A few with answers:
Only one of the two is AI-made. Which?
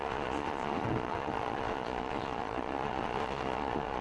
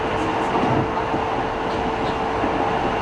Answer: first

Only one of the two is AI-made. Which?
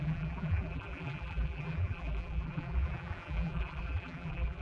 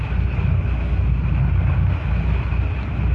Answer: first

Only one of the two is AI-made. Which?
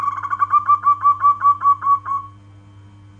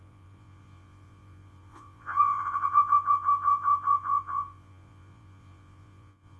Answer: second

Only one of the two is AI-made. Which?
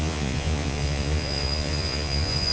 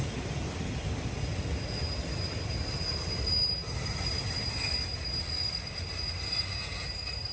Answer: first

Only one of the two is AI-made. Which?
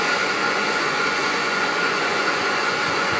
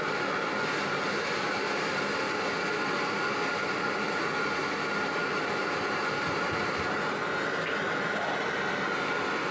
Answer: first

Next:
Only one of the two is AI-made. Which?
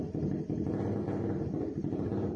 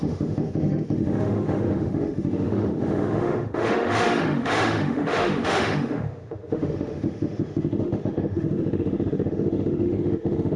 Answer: second